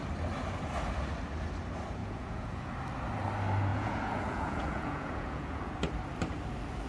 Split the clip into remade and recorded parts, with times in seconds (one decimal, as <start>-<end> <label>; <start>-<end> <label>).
0.0-2.0 recorded; 2.0-2.7 remade; 2.7-3.7 recorded; 3.7-5.8 remade; 5.8-6.9 recorded

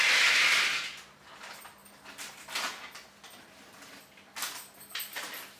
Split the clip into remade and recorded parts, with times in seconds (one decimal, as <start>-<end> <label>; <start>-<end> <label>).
0.0-5.6 recorded

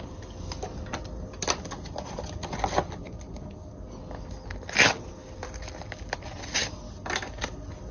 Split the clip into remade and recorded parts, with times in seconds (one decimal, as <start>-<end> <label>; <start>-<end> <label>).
0.0-7.9 recorded

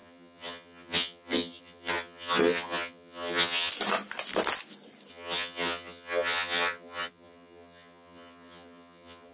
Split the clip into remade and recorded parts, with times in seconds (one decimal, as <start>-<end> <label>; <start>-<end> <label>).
0.0-3.7 remade; 3.7-5.1 recorded; 5.1-9.3 remade

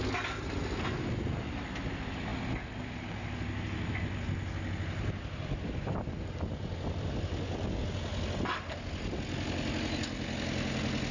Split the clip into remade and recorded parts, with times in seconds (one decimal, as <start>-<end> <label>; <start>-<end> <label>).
0.0-11.1 recorded